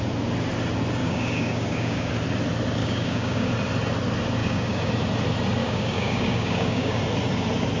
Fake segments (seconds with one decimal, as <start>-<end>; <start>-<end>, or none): 1.0-2.1; 2.8-3.5; 4.4-4.9; 5.6-7.0